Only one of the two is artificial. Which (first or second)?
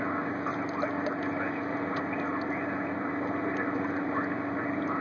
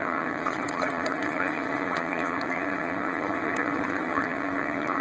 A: second